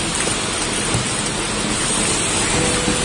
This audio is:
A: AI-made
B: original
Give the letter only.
B